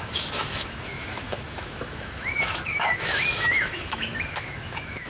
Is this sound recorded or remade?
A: remade